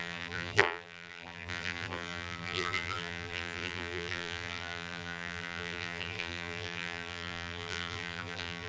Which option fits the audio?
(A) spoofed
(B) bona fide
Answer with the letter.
A